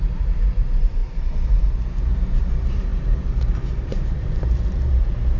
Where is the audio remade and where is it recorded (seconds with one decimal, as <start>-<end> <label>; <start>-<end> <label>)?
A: 0.0-5.4 remade